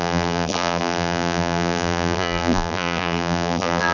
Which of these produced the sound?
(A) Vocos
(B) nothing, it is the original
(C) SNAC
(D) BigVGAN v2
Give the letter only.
D